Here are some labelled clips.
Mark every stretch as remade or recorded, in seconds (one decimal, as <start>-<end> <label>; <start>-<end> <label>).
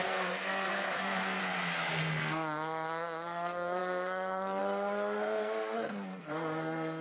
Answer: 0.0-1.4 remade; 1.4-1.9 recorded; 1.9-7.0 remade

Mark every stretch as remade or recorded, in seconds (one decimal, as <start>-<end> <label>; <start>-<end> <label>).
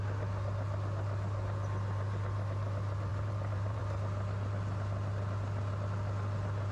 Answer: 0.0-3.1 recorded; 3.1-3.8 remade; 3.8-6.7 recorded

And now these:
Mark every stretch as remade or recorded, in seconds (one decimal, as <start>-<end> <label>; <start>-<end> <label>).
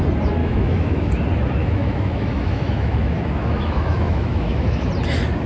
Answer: 0.0-0.4 recorded; 0.4-1.1 remade; 1.1-1.6 recorded; 1.6-4.9 remade; 4.9-5.5 recorded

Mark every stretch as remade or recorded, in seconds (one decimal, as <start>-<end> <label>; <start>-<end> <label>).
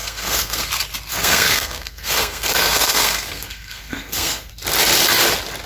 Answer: 0.0-0.7 remade; 0.7-1.1 recorded; 1.1-4.5 remade; 4.5-5.7 recorded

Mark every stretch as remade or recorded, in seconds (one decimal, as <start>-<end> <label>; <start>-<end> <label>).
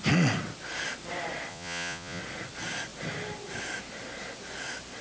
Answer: 0.0-1.5 recorded; 1.5-2.2 remade; 2.2-5.0 recorded